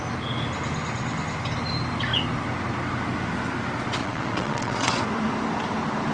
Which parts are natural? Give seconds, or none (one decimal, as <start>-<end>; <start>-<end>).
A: 0.0-4.0; 5.0-6.1